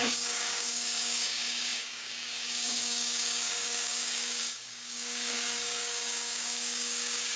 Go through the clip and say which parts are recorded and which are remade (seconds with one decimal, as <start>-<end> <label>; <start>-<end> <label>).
0.0-7.4 remade